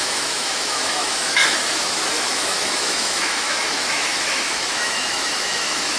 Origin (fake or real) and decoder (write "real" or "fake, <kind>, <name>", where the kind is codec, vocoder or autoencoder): fake, autoencoder, DAC-VAE